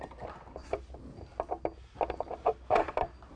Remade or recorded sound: recorded